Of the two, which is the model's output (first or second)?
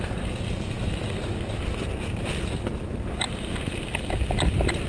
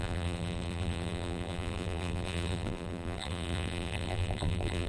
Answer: second